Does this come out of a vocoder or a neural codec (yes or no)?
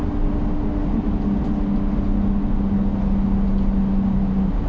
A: no